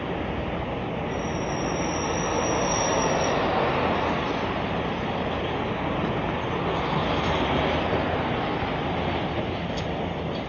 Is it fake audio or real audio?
real